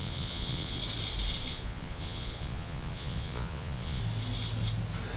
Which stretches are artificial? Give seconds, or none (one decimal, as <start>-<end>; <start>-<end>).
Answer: 0.0-0.8; 1.5-4.0